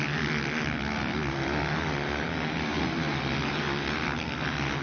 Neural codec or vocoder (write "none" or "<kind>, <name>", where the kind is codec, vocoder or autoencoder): none